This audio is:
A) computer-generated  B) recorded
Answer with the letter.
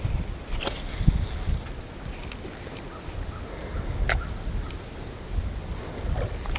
B